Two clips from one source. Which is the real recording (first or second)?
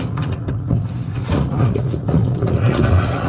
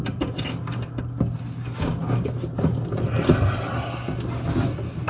second